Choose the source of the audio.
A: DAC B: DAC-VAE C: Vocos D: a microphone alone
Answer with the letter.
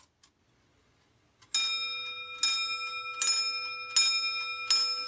D